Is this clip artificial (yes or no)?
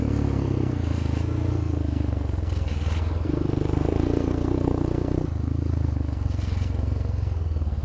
yes